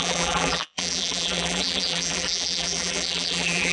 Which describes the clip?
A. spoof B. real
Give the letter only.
A